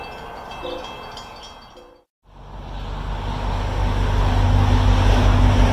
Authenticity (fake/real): real